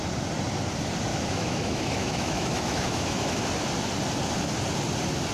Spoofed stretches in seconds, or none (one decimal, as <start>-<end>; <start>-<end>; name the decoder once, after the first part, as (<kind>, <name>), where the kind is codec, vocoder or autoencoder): 1.1-3.5 (autoencoder, DAC-VAE)